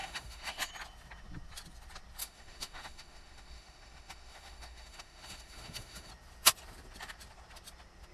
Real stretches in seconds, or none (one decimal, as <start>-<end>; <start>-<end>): 0.7-2.2; 6.1-8.1